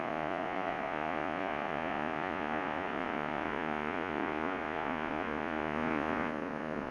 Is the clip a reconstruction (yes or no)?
yes